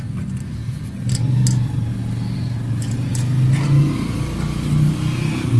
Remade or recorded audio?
recorded